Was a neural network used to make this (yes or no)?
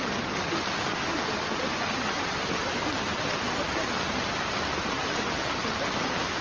no